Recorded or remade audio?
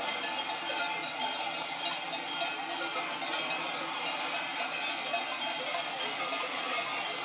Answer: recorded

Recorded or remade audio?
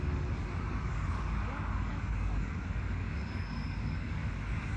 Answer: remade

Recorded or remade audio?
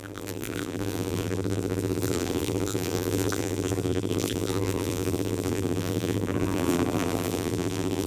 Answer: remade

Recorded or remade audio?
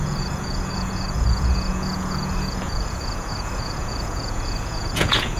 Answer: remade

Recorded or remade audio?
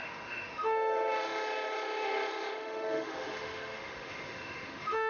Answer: remade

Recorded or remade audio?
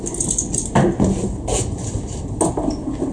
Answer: recorded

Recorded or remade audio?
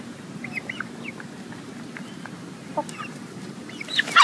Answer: recorded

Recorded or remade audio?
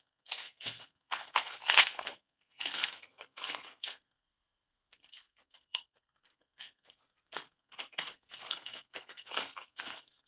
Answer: remade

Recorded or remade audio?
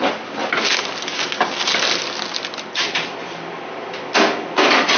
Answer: recorded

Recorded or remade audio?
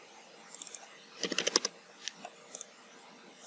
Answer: recorded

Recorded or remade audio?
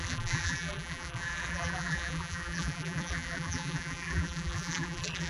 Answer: remade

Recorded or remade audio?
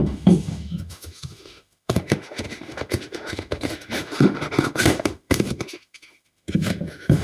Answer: remade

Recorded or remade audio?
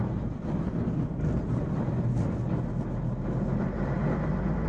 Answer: recorded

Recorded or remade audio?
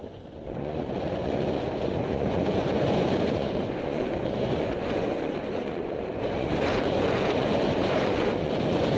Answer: remade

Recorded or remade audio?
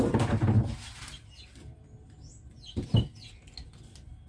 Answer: recorded